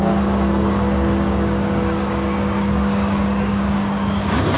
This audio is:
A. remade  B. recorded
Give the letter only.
A